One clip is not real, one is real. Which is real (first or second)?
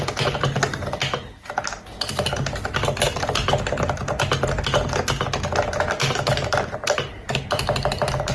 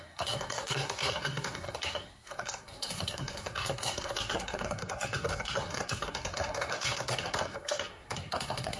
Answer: first